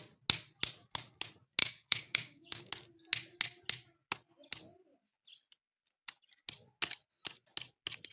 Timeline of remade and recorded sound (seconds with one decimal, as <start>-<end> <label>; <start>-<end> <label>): 0.0-1.6 recorded; 1.6-2.7 remade; 2.7-8.1 recorded